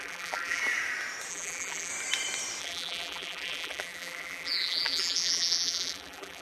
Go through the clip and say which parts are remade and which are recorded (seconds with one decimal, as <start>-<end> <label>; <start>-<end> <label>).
0.0-0.6 remade; 0.6-1.3 recorded; 1.3-1.9 remade; 1.9-2.6 recorded; 2.6-6.4 remade